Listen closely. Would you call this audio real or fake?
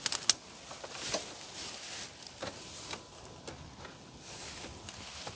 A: real